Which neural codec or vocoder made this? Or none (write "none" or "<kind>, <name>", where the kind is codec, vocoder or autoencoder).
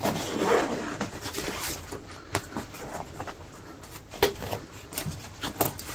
vocoder, BigVGAN v2